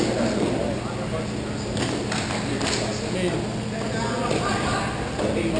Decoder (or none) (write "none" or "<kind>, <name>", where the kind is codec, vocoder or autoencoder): none